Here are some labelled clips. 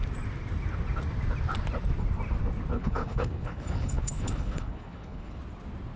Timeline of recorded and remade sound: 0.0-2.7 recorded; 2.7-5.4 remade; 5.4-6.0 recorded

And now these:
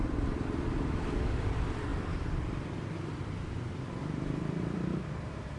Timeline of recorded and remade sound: 0.0-5.6 remade

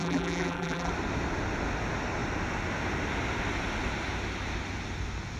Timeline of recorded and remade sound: 0.0-0.9 remade; 0.9-5.4 recorded

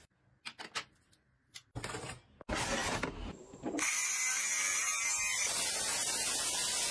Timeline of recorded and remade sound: 0.0-2.8 recorded; 2.8-4.1 remade; 4.1-4.8 recorded; 4.8-5.8 remade; 5.8-6.9 recorded

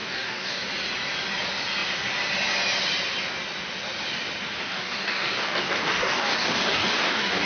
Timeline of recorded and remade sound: 0.0-0.6 remade; 0.6-4.7 recorded; 4.7-7.5 remade

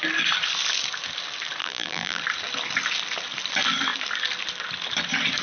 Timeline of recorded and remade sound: 0.0-1.6 recorded; 1.6-2.2 remade; 2.2-5.4 recorded

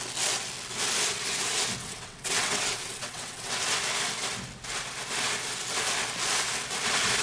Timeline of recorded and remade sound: 0.0-1.8 recorded; 1.8-3.5 remade; 3.5-7.2 recorded

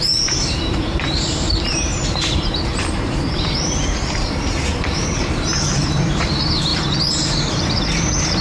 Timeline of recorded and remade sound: 0.0-8.4 remade